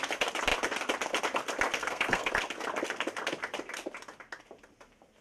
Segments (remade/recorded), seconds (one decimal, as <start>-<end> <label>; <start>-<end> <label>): 0.0-1.8 recorded; 1.8-2.3 remade; 2.3-5.2 recorded